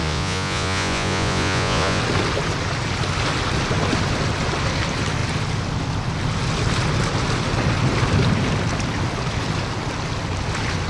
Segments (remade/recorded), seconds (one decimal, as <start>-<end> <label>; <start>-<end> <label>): 0.0-2.0 remade; 2.0-10.9 recorded